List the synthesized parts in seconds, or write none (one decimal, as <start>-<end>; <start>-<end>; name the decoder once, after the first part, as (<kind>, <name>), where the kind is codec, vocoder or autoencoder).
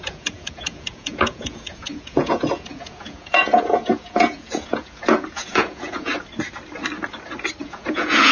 0.0-6.1 (vocoder, Vocos); 7.6-8.3